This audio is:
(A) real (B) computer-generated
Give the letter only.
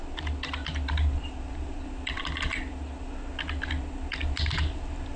A